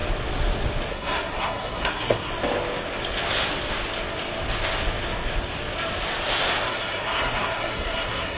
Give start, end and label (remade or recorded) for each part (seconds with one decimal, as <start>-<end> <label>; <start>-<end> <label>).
0.0-0.9 recorded; 0.9-2.3 remade; 2.3-6.7 recorded; 6.7-8.4 remade